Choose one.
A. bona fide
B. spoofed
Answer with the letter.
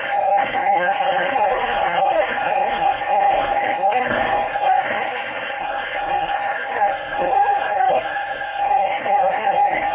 B